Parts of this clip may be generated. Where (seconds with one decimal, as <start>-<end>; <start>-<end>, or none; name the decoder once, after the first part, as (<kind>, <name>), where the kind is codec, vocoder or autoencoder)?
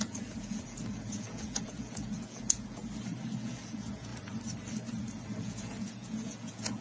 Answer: 0.0-2.8 (vocoder, Vocos); 3.4-4.1; 5.4-6.8